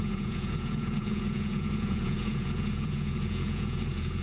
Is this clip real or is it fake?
fake